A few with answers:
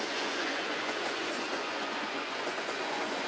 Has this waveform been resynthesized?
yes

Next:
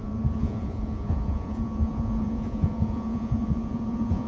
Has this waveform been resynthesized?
yes